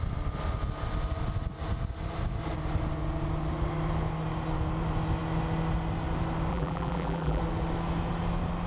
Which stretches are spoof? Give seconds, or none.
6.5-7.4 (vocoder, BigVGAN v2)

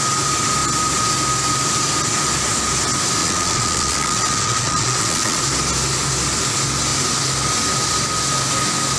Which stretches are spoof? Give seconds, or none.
3.2-5.4 (vocoder, Vocos)